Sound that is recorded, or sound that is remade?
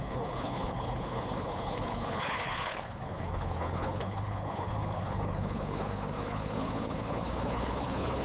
remade